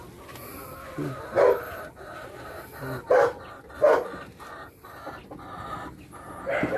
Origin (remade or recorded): recorded